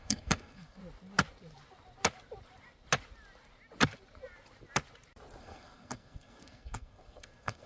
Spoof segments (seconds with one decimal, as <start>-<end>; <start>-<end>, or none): 0.0-0.8; 5.4-7.7